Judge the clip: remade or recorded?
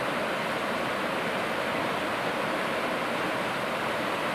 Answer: recorded